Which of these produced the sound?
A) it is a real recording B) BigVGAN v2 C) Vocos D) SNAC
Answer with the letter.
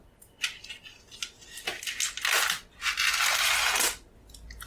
A